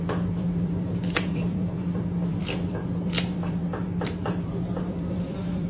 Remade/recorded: remade